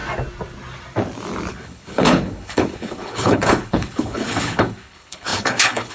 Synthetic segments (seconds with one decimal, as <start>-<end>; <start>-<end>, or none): 1.5-5.9